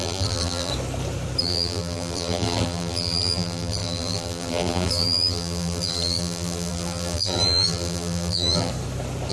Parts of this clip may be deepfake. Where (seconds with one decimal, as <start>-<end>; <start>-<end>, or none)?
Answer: 0.0-0.7; 1.4-8.7